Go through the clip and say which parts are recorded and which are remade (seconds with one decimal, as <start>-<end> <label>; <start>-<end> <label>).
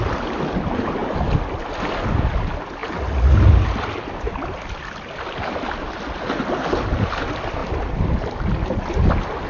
0.0-9.5 recorded